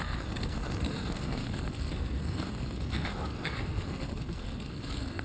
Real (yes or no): no